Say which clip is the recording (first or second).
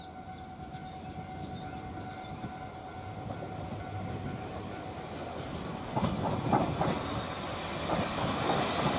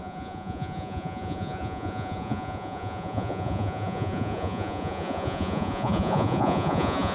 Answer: first